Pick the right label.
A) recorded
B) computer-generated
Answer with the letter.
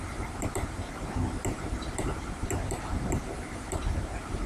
B